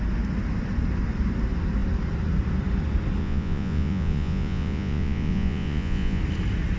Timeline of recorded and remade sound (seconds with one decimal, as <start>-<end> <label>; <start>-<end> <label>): 0.0-3.2 recorded; 3.2-6.2 remade; 6.2-6.8 recorded